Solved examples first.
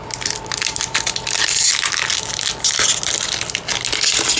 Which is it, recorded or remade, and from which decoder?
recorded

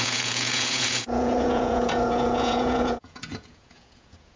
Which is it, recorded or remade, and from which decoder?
remade, vocoder, Vocos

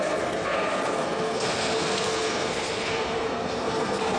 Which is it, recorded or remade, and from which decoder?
remade, codec, SNAC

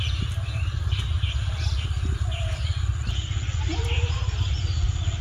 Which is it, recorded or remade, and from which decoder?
recorded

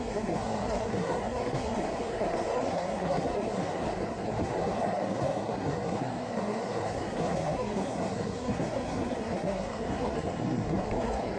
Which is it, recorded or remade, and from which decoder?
remade, codec, SNAC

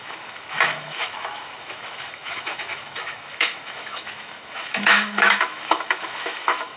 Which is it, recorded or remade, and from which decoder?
remade, autoencoder, DAC-VAE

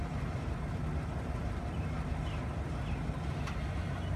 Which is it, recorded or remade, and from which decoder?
recorded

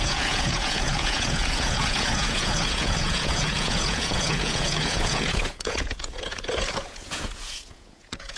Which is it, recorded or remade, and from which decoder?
remade, vocoder, Vocos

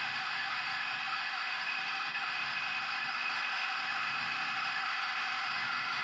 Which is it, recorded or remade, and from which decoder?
remade, autoencoder, DAC-VAE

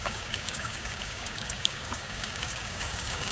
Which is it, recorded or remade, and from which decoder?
remade, codec, DAC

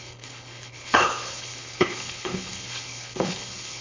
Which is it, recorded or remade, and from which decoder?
remade, codec, HILCodec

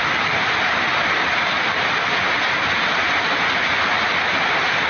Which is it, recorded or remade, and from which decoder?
recorded